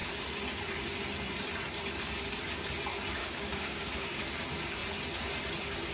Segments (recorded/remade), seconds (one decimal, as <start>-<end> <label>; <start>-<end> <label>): 0.0-3.2 recorded; 3.2-4.2 remade; 4.2-5.9 recorded